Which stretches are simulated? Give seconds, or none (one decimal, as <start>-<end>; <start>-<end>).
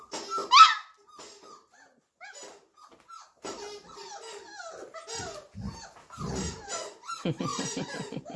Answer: 4.0-4.6; 7.5-8.4